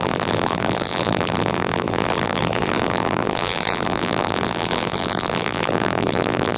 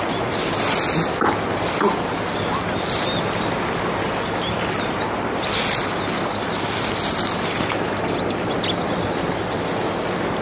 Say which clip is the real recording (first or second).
second